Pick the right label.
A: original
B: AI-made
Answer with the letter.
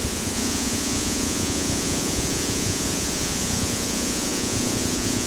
B